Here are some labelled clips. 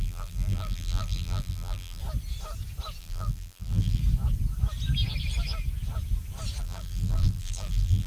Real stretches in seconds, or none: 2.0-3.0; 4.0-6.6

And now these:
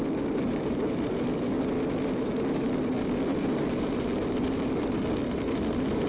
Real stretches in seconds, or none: 0.0-6.1